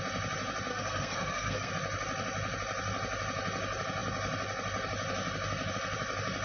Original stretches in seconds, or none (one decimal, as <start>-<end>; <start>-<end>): 0.0-0.7; 1.7-6.4